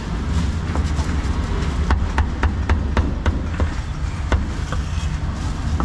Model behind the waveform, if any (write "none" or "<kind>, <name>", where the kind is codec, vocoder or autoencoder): none